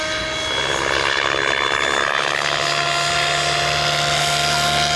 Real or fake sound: real